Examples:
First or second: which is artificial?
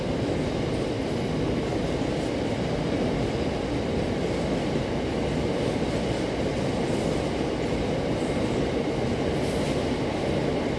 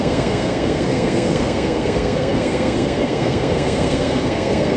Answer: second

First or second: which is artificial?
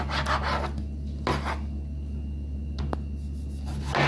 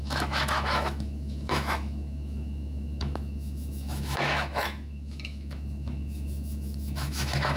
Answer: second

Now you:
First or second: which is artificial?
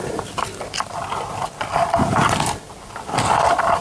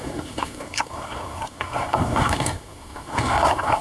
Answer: second